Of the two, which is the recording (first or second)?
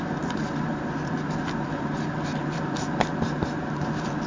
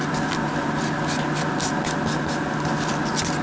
second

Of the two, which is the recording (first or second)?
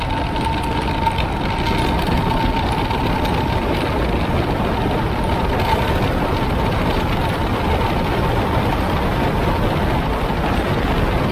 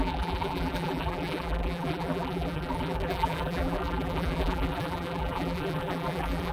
first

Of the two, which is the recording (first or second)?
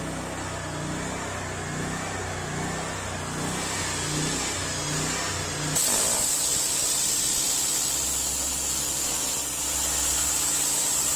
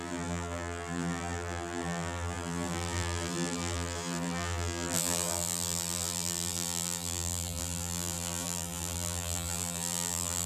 first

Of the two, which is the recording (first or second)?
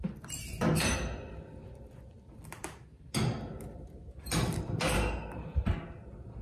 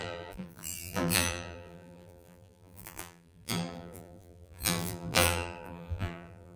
first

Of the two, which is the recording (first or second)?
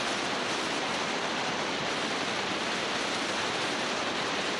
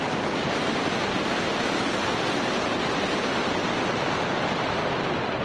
second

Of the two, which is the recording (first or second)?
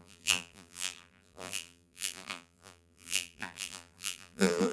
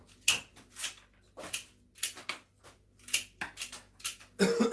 second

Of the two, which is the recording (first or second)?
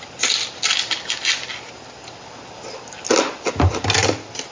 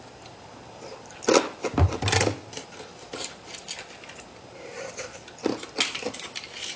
first